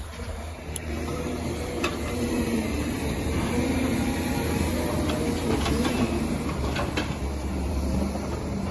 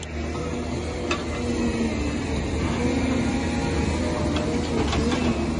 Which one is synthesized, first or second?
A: first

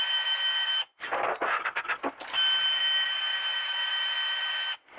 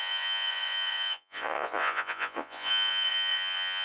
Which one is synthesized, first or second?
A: second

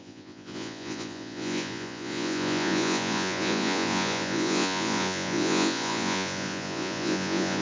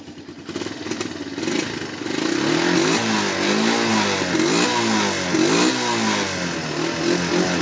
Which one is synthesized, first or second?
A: first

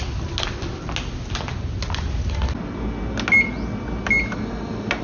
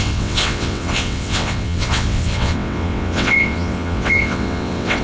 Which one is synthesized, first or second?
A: second